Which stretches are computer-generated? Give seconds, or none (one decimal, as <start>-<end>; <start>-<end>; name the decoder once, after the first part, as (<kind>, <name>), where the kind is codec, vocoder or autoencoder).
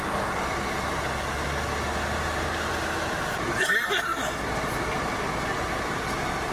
none